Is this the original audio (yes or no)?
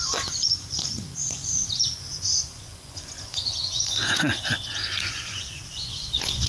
no